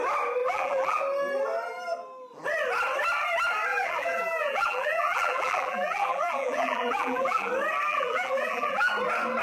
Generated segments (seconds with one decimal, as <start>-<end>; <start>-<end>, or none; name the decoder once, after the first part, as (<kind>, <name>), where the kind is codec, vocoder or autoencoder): 0.4-1.0 (vocoder, BigVGAN v2); 3.7-7.5; 7.9-8.9